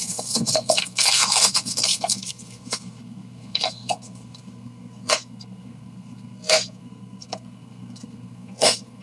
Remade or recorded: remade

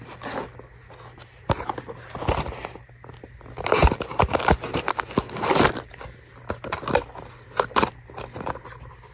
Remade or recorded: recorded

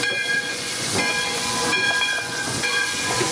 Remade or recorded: remade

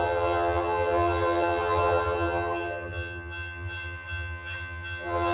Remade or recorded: remade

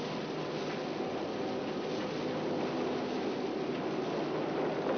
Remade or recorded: recorded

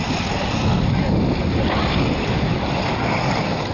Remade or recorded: recorded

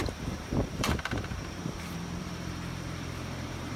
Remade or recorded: remade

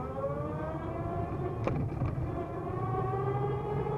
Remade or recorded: recorded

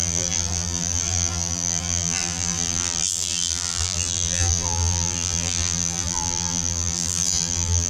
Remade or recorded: remade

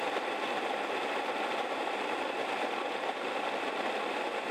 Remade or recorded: recorded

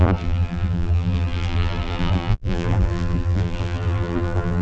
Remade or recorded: remade